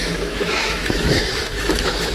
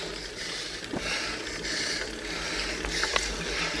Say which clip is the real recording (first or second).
second